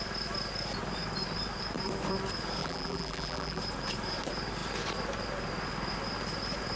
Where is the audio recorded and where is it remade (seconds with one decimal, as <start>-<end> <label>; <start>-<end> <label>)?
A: 0.0-2.6 recorded; 2.6-3.6 remade; 3.6-6.8 recorded